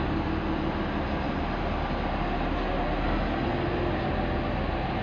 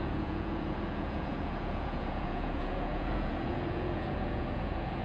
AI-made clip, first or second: second